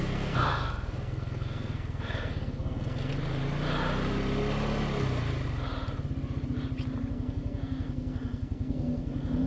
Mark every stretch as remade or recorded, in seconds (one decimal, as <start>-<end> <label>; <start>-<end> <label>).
0.0-3.1 remade; 3.1-7.1 recorded; 7.1-9.5 remade